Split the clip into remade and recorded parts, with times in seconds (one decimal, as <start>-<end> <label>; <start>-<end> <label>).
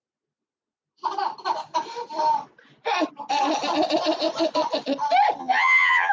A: 0.0-5.4 recorded; 5.4-6.1 remade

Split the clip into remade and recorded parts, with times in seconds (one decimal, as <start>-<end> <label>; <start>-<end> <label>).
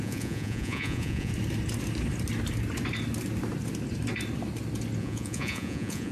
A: 0.0-1.3 remade; 1.3-5.0 recorded; 5.0-6.1 remade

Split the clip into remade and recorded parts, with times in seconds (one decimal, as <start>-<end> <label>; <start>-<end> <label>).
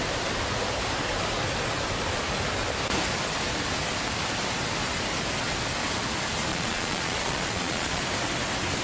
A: 0.0-6.5 recorded; 6.5-8.0 remade; 8.0-8.8 recorded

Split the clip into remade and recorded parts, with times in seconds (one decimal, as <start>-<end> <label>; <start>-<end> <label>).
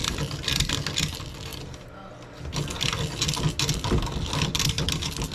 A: 0.0-0.7 remade; 0.7-5.3 recorded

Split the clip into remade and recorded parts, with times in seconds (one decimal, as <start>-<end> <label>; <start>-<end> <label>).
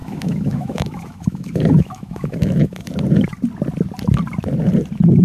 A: 0.0-2.9 remade; 2.9-5.2 recorded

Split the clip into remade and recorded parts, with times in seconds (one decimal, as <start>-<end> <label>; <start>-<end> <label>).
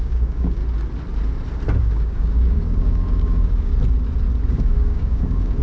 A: 0.0-0.6 remade; 0.6-1.8 recorded; 1.8-3.7 remade; 3.7-4.5 recorded; 4.5-5.6 remade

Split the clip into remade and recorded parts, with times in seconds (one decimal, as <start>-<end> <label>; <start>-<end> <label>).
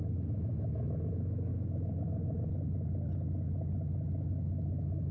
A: 0.0-1.5 remade; 1.5-4.3 recorded; 4.3-5.1 remade